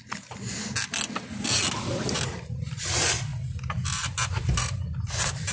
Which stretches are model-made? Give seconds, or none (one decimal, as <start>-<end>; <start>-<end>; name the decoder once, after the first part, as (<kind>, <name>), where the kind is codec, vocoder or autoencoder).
none